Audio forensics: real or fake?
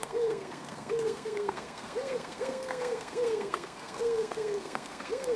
fake